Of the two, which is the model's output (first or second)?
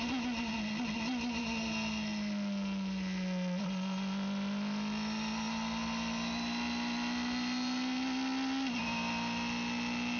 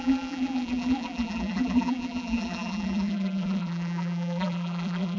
second